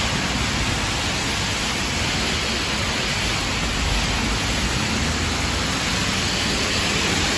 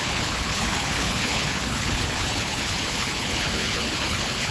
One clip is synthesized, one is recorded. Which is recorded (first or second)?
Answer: first